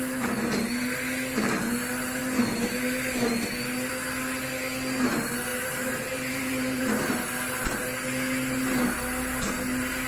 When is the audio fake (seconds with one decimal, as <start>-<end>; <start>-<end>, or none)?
5.5-6.8